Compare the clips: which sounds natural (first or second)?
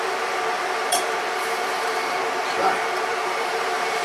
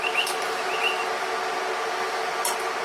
second